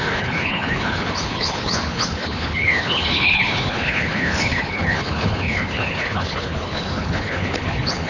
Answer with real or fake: fake